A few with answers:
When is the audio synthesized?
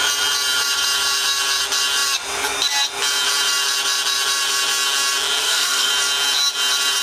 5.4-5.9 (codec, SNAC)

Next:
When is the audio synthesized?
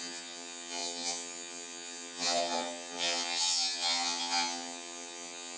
0.0-5.6 (vocoder, HiFi-GAN)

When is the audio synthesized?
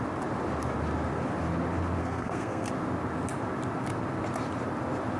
2.0-2.7 (codec, SNAC)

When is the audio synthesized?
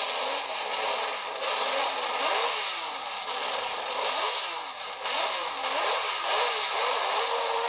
5.6-6.1 (vocoder, BigVGAN v2)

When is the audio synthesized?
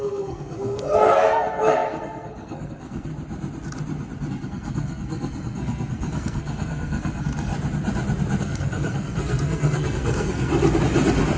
0.0-3.1 (codec, SNAC); 4.3-7.5; 8.4-10.5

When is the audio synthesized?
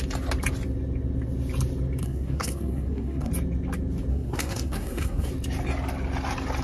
2.0-3.3 (codec, SNAC); 4.1-5.3